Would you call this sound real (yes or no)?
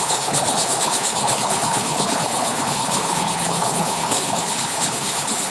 no